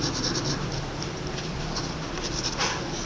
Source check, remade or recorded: recorded